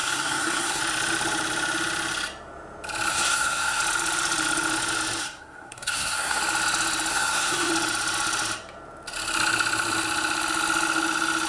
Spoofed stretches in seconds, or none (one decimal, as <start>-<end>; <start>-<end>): 0.0-0.8; 3.1-3.8; 5.2-6.4; 7.1-7.7